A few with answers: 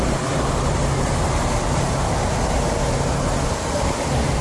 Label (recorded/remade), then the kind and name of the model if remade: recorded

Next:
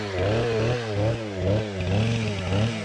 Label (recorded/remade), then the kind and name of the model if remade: recorded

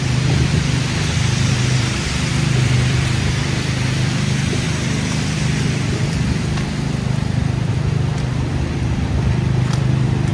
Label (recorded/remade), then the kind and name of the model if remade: remade, vocoder, BigVGAN v2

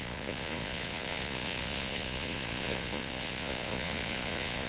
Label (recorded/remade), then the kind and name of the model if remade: remade, vocoder, Vocos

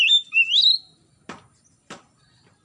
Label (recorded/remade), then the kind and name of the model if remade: recorded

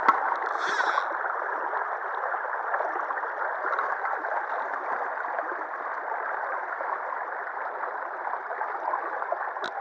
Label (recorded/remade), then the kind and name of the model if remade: recorded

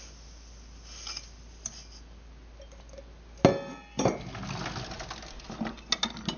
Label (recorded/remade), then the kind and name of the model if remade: recorded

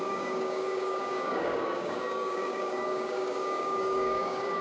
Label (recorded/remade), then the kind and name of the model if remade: remade, codec, DAC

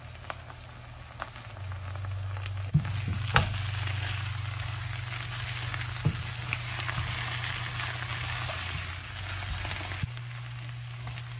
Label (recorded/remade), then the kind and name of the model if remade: recorded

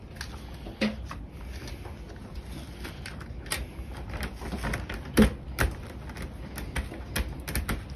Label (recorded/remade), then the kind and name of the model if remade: recorded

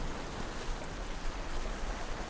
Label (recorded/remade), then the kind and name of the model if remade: recorded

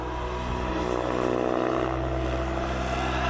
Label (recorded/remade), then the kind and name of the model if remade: recorded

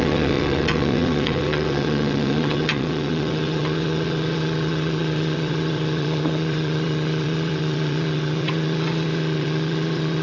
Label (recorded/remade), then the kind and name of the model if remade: remade, vocoder, WaveNeXt